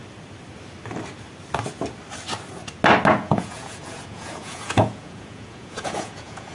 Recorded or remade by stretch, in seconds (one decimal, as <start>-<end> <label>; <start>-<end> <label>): 0.0-3.1 recorded; 3.1-6.5 remade